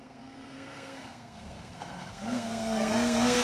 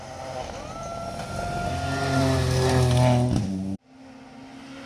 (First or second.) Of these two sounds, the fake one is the first